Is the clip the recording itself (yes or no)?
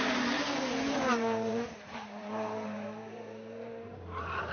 no